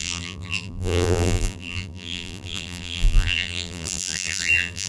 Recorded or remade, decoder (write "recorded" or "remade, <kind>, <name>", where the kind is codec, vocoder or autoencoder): remade, vocoder, BigVGAN v2